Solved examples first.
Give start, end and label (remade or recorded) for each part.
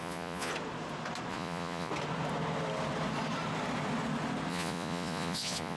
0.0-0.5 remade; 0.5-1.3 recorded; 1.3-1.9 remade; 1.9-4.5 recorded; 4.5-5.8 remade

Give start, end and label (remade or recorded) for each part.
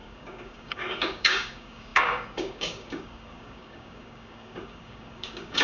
0.0-5.6 remade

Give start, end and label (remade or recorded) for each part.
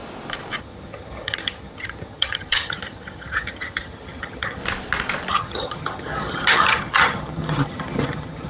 0.0-0.6 recorded; 0.6-4.6 remade; 4.6-5.3 recorded; 5.3-8.5 remade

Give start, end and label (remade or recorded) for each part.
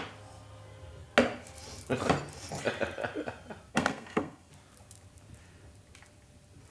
0.0-3.7 recorded; 3.7-4.5 remade; 4.5-6.7 recorded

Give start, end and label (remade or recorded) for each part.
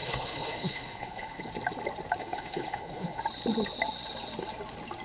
0.0-1.5 remade; 1.5-2.2 recorded; 2.2-3.2 remade; 3.2-5.0 recorded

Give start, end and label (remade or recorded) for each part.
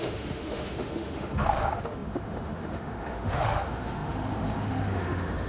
0.0-5.5 remade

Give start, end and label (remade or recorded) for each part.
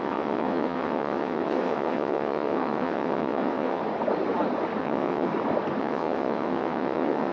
0.0-3.8 remade; 3.8-4.8 recorded; 4.8-5.3 remade; 5.3-5.8 recorded; 5.8-7.3 remade